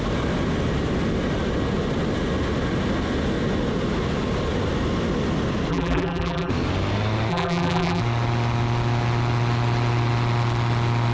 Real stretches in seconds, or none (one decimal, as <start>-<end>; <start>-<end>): 0.0-5.7; 6.5-7.3; 8.0-11.1

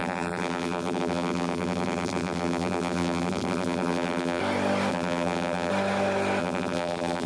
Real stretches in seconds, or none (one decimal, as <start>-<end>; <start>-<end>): 4.4-4.9; 5.7-6.4

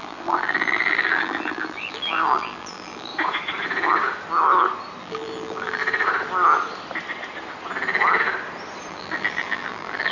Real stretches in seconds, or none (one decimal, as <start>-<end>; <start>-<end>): 3.1-5.0; 5.8-8.9

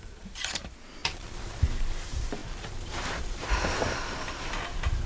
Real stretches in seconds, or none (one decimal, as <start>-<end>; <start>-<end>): none

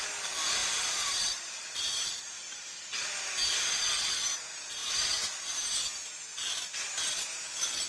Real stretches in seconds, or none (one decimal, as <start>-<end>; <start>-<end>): 0.0-0.6; 2.8-4.8; 5.4-6.3; 6.9-7.9

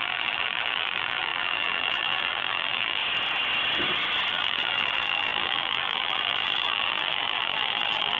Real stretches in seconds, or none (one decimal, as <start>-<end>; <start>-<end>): 3.0-4.3

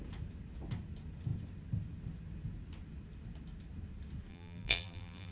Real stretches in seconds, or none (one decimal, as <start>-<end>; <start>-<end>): 0.0-4.3